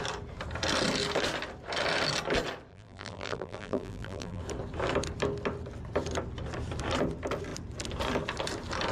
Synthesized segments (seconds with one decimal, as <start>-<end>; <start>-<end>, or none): 2.7-4.4